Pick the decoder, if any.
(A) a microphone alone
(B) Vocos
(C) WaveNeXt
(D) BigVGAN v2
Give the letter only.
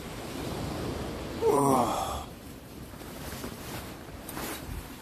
D